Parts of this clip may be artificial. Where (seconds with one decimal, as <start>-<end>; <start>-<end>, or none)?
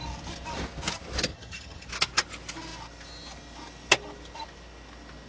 1.3-1.9